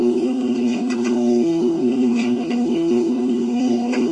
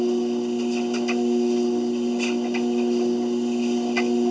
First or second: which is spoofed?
first